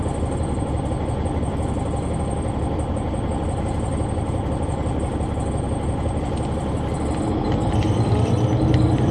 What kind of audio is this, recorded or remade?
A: recorded